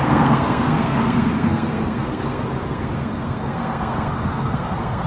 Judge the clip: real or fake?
fake